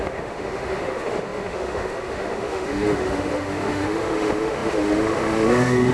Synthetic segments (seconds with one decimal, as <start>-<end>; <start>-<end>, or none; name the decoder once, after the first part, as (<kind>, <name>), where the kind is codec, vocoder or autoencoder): 0.0-5.9 (autoencoder, DAC-VAE)